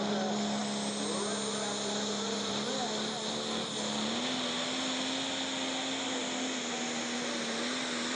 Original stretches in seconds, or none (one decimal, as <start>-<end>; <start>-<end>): 0.0-8.1